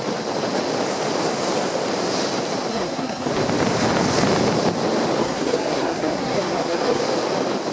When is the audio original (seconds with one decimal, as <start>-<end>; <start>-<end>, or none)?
0.0-2.7; 3.3-5.2; 7.0-7.7